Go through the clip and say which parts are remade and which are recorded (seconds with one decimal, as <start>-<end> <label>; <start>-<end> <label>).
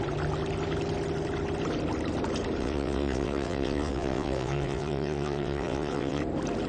0.0-2.6 recorded; 2.6-6.2 remade; 6.2-6.7 recorded